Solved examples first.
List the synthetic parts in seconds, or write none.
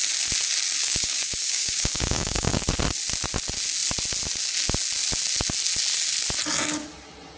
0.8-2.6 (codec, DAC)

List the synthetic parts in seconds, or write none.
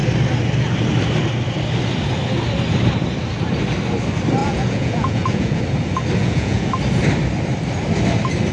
4.4-5.6 (vocoder, Vocos); 6.2-6.7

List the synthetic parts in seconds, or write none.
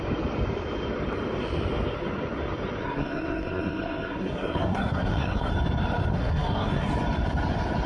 2.8-5.5 (codec, SNAC); 6.1-6.9